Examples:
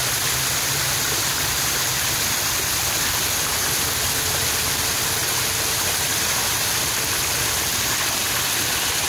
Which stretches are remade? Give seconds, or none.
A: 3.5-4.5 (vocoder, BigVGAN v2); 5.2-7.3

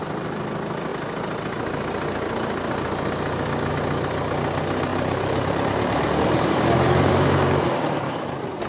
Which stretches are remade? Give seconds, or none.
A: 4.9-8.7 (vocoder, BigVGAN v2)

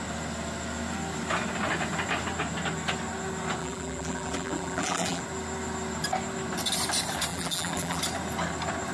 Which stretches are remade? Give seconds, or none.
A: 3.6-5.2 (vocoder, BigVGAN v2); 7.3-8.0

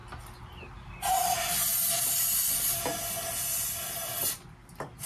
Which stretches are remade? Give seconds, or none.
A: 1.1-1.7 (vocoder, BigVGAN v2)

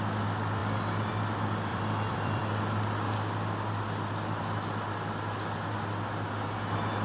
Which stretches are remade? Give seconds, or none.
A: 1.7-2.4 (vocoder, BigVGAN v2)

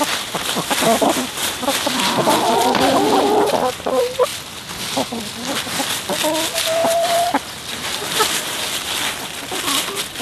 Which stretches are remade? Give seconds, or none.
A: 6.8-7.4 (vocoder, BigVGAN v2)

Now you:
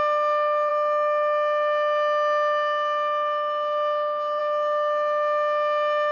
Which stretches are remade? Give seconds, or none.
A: none